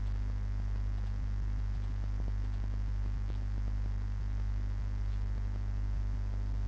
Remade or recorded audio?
remade